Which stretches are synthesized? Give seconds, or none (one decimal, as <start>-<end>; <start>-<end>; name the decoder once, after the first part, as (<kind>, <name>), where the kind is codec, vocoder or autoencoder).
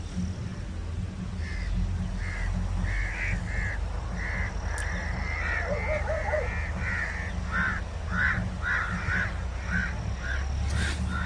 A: none